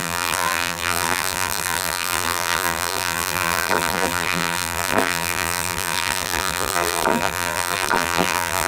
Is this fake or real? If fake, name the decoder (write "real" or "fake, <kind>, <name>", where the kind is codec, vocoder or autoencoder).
fake, vocoder, BigVGAN v2